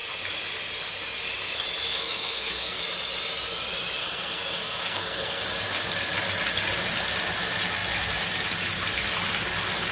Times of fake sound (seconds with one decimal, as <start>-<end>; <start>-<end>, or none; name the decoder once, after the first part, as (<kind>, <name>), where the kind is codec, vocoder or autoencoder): 1.9-2.8 (codec, SNAC); 4.0-5.4